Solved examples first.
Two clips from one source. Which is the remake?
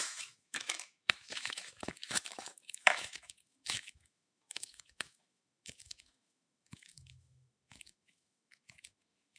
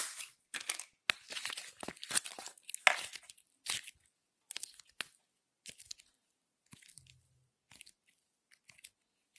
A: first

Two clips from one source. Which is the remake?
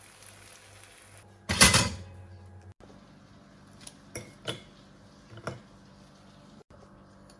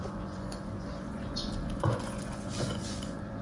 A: second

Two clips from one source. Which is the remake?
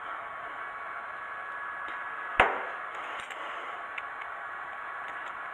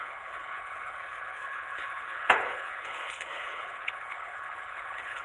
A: second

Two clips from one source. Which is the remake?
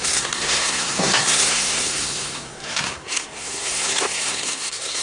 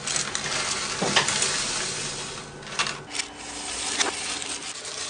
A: first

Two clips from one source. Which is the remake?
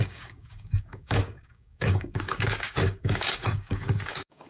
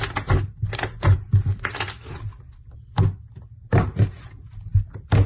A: first